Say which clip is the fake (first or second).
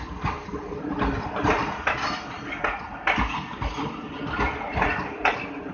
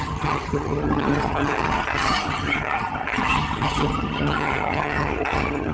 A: second